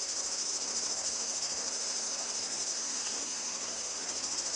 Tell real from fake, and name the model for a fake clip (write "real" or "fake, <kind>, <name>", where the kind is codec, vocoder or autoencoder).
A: fake, codec, SNAC